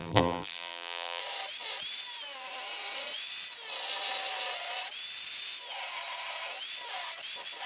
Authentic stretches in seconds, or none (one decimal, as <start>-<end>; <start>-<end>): 1.2-7.7